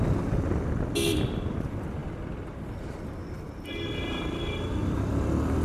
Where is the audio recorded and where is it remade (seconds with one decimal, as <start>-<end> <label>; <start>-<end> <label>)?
0.0-5.6 recorded